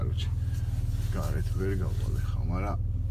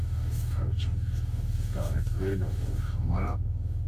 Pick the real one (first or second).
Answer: first